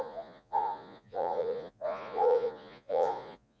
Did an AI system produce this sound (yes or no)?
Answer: yes